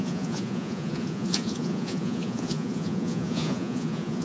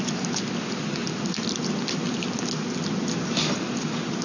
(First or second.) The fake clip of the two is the first